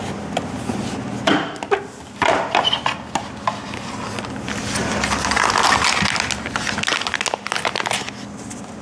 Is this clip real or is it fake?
real